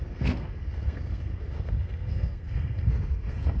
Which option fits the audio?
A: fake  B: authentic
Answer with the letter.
A